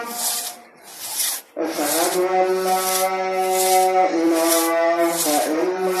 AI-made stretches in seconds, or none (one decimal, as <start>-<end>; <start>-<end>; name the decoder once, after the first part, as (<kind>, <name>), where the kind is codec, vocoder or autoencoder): 0.0-0.9 (vocoder, BigVGAN v2); 4.5-6.0